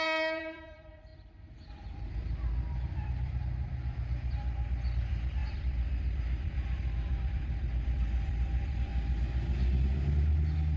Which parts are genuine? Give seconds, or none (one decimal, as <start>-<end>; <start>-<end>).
8.9-10.8